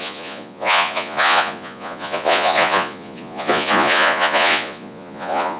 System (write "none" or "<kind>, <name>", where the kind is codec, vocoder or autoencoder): vocoder, Vocos